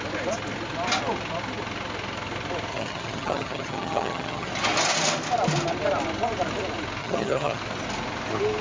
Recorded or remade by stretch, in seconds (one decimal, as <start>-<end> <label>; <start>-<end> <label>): 0.0-2.7 recorded; 2.7-4.5 remade; 4.5-7.0 recorded; 7.0-7.6 remade; 7.6-8.6 recorded